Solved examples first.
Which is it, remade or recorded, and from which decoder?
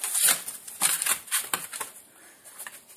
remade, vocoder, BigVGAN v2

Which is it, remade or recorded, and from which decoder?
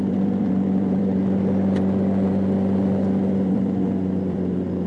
remade, vocoder, BigVGAN v2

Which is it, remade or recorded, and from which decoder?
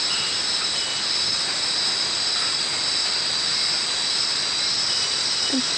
recorded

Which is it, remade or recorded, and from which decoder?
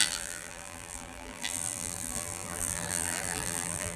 remade, vocoder, BigVGAN v2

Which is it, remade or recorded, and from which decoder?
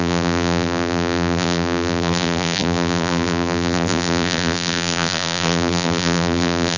remade, vocoder, BigVGAN v2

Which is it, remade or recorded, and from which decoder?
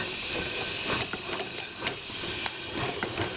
recorded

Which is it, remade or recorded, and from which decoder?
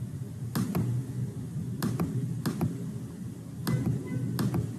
recorded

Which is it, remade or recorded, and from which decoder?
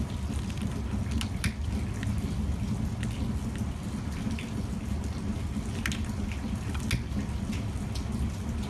recorded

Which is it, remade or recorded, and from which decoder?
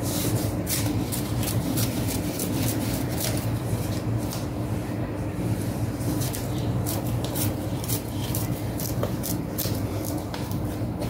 remade, vocoder, BigVGAN v2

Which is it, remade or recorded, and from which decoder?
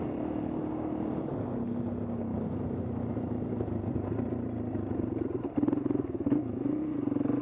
recorded